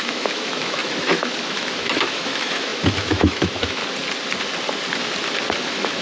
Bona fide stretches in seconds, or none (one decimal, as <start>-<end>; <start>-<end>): 3.8-5.6